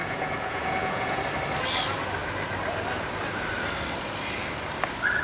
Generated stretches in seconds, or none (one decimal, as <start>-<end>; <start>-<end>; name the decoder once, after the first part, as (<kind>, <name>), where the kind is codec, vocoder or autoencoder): 0.0-1.2 (vocoder, Vocos)